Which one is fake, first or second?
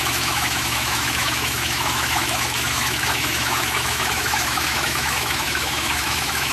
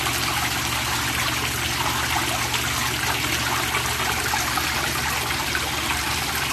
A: first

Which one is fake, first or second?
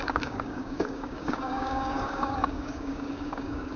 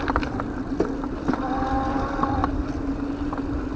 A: first